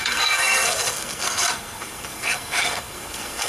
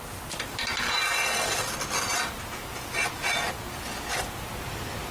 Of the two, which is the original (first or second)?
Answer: second